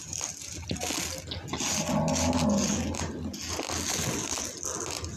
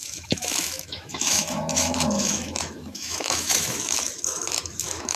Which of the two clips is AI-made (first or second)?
second